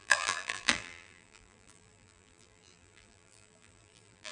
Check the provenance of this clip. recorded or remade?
remade